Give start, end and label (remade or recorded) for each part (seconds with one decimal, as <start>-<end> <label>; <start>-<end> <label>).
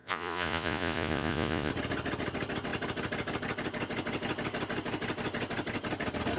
0.0-1.7 remade; 1.7-6.4 recorded